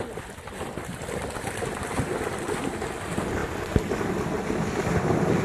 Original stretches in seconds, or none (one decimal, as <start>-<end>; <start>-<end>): 0.0-5.4